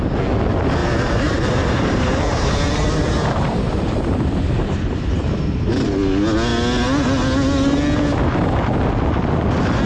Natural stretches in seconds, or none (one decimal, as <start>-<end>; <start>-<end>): 0.0-0.8; 5.7-9.9